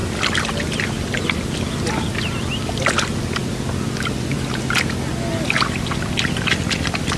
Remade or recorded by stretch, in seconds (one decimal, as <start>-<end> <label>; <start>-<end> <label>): 0.0-7.2 recorded